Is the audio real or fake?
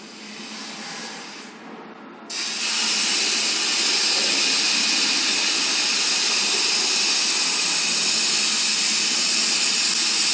real